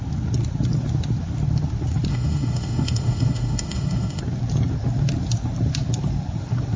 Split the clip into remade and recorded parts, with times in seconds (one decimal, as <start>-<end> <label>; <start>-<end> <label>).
0.0-2.1 recorded; 2.1-4.2 remade; 4.2-6.8 recorded